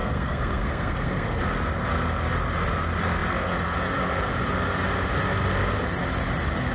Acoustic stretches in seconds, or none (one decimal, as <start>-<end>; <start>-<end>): 1.4-6.7